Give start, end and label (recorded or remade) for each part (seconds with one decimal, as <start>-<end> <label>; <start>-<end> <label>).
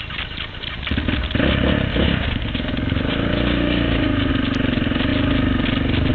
0.0-1.9 recorded; 1.9-4.3 remade; 4.3-6.1 recorded